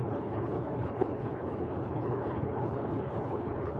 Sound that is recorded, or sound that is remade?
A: remade